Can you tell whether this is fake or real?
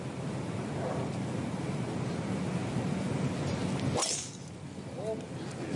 real